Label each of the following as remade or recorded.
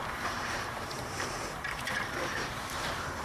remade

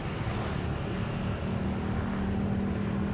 recorded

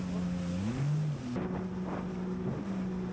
recorded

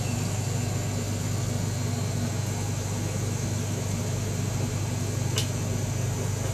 recorded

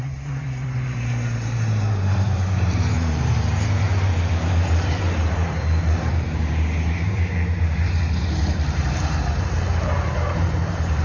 remade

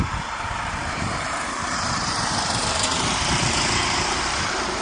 remade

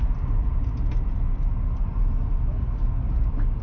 recorded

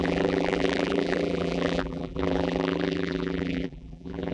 remade